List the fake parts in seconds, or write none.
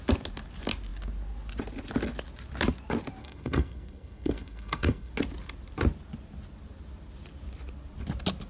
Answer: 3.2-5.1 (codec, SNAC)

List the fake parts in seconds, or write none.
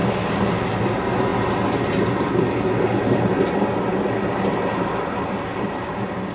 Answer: none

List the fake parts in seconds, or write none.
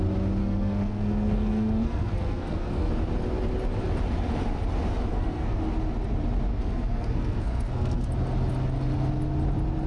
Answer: 0.4-2.9 (codec, SNAC); 5.1-5.6; 6.5-8.1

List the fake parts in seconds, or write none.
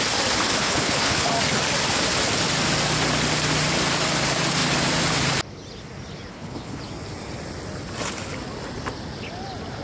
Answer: 0.6-1.3 (codec, HILCodec); 6.3-6.8